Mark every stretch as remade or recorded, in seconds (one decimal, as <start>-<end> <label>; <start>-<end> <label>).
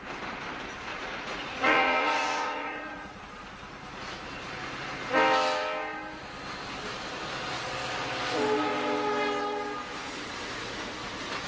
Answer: 0.0-0.9 recorded; 0.9-3.2 remade; 3.2-11.5 recorded